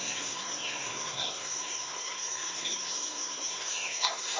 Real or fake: fake